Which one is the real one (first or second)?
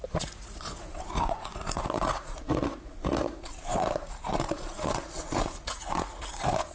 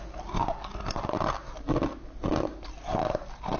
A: second